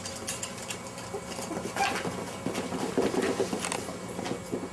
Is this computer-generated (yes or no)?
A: no